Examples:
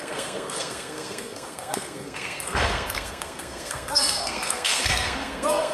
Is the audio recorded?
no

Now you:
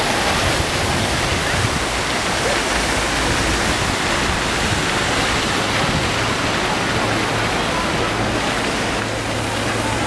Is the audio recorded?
yes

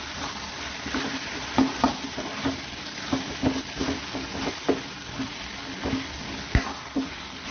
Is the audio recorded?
yes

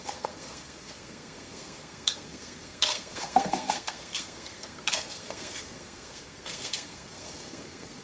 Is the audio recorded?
no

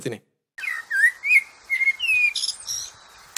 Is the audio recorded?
yes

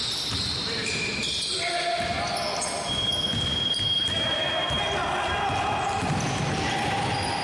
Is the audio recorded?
yes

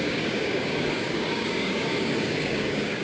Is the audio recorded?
no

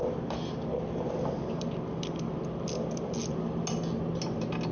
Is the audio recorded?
yes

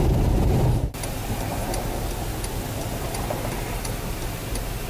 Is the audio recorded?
yes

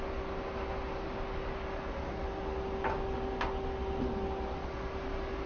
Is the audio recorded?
yes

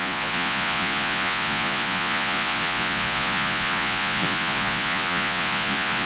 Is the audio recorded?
no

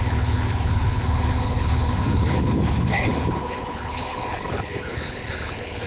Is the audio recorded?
no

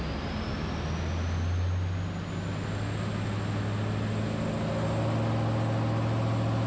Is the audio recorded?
yes